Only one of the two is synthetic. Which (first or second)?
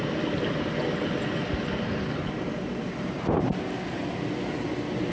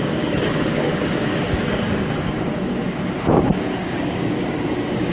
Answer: second